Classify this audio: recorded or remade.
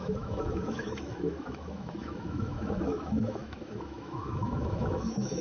remade